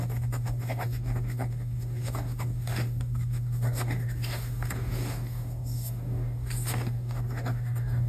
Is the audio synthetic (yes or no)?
yes